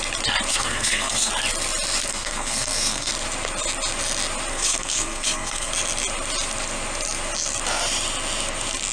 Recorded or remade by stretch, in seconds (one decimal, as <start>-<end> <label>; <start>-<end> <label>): 0.0-0.5 recorded; 0.5-1.3 remade; 1.3-2.1 recorded; 2.1-3.1 remade; 3.1-4.5 recorded; 4.5-5.7 remade; 5.7-8.9 recorded